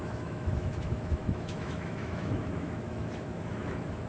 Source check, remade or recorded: remade